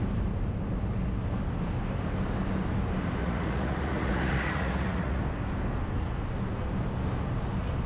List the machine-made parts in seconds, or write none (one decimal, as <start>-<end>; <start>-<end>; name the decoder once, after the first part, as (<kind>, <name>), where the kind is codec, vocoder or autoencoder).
3.2-5.2 (vocoder, Vocos)